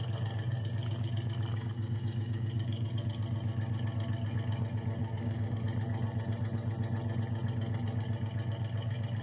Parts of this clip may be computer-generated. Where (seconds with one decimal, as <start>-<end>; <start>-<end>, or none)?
1.5-3.0; 5.0-5.6